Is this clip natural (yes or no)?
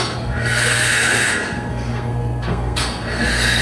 no